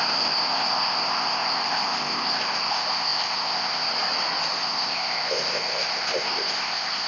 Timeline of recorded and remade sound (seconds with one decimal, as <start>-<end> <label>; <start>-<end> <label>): 0.0-3.9 remade; 3.9-4.5 recorded; 4.5-7.1 remade